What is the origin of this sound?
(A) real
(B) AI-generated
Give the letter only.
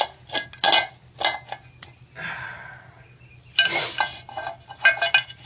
A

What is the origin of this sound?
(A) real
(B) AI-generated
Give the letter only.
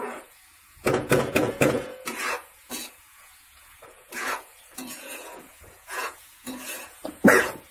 B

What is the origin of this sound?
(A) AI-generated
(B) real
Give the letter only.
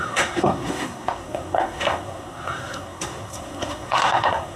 A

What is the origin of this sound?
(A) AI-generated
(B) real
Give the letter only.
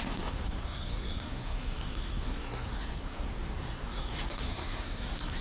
A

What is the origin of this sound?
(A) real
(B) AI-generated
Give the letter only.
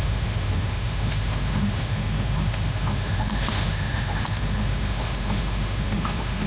B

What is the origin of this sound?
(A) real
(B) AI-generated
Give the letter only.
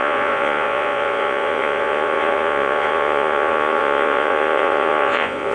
B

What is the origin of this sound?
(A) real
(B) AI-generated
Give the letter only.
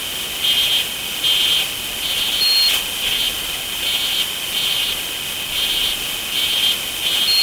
A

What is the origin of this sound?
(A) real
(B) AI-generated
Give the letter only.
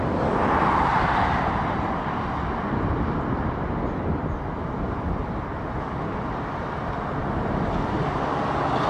A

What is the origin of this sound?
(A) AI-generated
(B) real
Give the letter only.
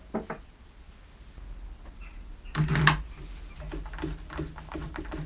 B